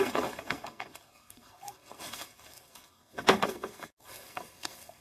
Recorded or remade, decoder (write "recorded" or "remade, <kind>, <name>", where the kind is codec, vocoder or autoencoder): remade, codec, SNAC